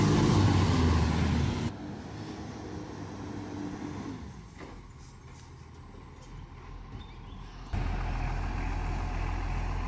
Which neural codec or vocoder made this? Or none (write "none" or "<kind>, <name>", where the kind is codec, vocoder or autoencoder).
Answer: none